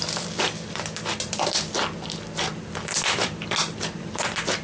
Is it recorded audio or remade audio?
remade